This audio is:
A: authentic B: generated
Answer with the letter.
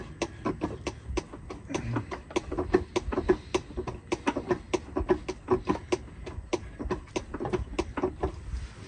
A